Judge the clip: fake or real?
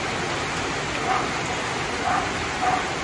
real